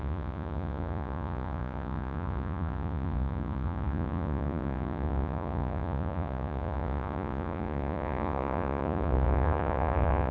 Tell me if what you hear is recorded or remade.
remade